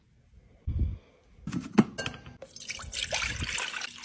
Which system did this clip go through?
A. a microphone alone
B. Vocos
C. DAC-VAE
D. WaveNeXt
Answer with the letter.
A